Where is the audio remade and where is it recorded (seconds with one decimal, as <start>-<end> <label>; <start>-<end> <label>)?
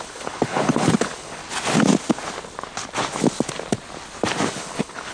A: 0.0-1.4 remade; 1.4-4.5 recorded; 4.5-5.1 remade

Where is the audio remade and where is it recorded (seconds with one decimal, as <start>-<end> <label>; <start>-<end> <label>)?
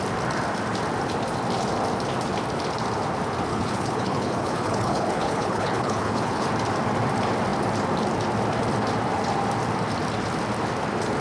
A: 0.0-3.5 recorded; 3.5-6.5 remade; 6.5-11.2 recorded